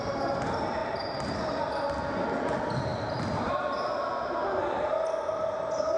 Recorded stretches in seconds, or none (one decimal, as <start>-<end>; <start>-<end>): 0.0-6.0